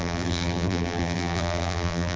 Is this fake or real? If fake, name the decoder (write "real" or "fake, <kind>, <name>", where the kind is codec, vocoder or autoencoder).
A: fake, vocoder, BigVGAN v2